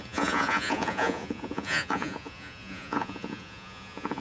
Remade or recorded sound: remade